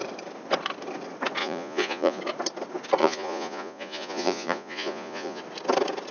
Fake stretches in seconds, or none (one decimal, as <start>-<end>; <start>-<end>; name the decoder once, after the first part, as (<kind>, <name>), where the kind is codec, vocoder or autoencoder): 1.4-2.2 (vocoder, Vocos); 3.0-5.4